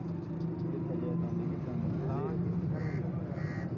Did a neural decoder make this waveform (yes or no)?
no